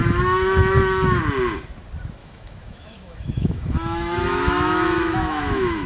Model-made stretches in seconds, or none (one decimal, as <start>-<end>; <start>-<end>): 0.0-1.2; 2.2-5.9